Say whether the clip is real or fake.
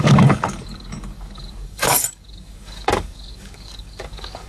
fake